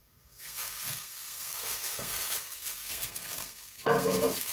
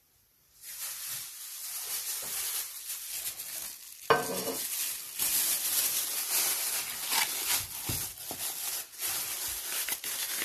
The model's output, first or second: first